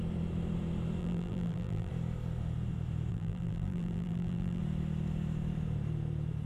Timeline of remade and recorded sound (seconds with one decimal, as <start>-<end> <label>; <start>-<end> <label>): 0.0-1.0 recorded; 1.0-1.9 remade; 1.9-3.1 recorded; 3.1-4.6 remade; 4.6-6.5 recorded